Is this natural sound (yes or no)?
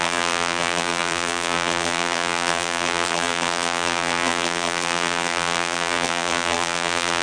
no